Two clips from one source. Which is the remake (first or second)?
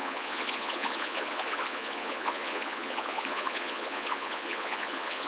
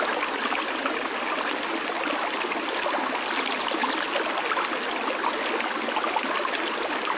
first